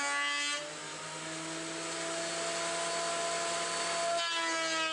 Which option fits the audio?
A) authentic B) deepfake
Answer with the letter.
A